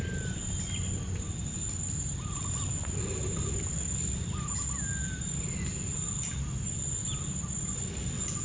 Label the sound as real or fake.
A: real